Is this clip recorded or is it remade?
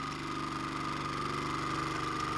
recorded